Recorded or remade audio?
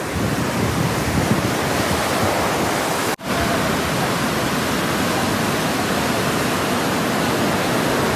recorded